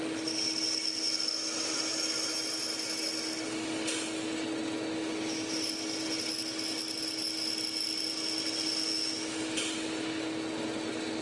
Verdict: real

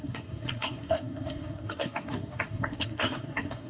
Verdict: fake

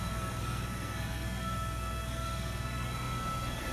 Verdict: fake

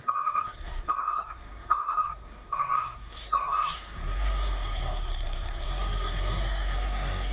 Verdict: fake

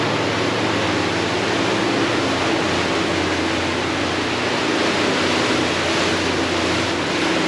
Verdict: real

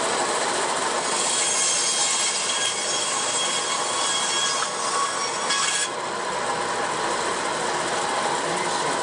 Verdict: real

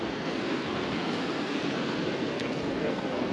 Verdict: fake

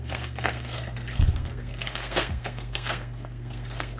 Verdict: fake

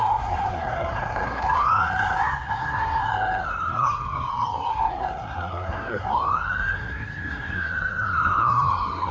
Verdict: fake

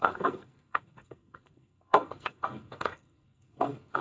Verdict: fake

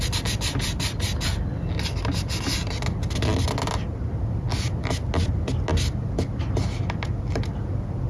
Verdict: real